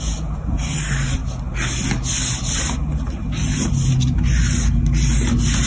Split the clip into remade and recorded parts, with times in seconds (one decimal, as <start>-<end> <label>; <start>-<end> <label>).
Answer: 0.0-5.7 recorded